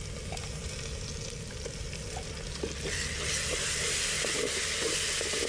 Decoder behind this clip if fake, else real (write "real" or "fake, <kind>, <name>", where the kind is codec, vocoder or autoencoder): real